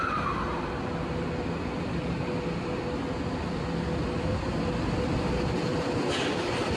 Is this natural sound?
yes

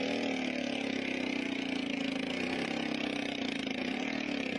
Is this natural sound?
yes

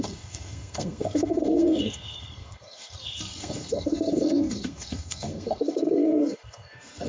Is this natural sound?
no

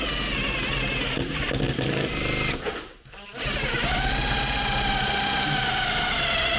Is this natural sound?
yes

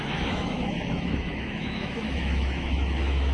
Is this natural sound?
no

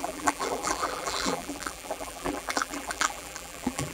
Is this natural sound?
no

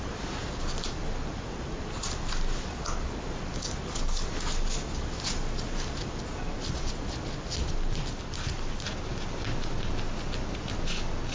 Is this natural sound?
yes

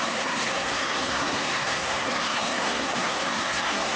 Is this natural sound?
no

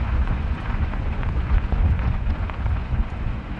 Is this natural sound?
no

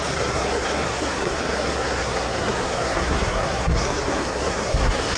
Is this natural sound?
no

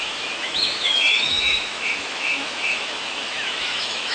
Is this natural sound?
no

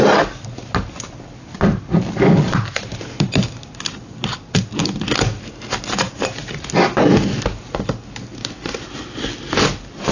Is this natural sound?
yes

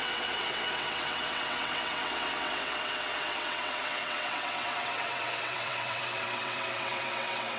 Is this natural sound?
no